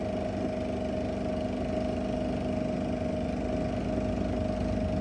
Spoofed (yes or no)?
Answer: no